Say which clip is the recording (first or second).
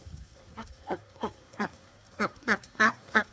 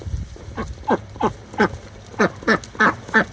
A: second